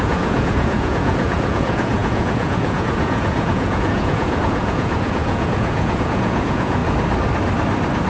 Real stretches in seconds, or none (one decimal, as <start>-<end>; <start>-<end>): 6.8-8.1